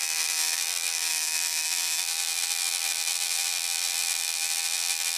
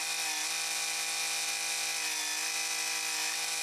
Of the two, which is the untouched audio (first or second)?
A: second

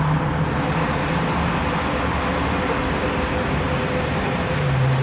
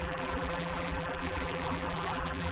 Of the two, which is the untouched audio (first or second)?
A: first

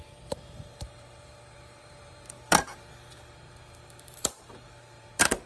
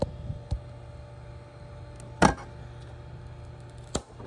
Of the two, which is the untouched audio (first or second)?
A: second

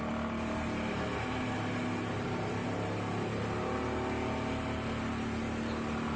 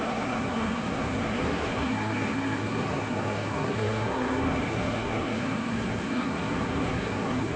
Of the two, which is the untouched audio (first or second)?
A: first